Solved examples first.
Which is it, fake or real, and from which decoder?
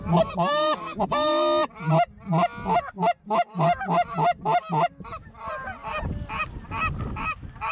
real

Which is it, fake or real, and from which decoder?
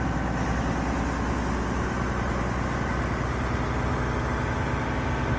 real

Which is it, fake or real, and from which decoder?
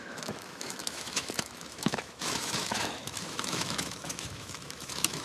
fake, autoencoder, DAC-VAE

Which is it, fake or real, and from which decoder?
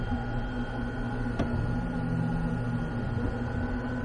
real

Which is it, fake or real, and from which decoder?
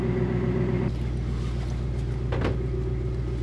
real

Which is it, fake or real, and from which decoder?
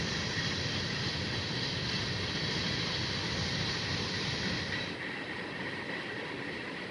fake, vocoder, BigVGAN v2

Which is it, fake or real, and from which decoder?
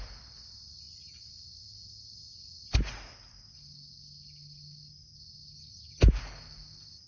real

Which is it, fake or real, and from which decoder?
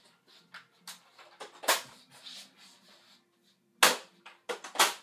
real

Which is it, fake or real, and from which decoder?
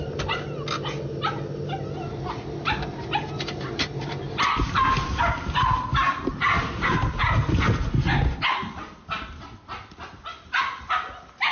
real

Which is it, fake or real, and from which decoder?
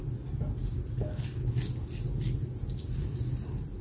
real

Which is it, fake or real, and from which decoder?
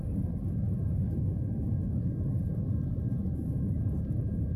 fake, vocoder, BigVGAN v2